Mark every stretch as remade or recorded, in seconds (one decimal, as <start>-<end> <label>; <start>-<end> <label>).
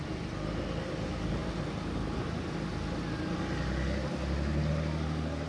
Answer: 0.0-5.5 recorded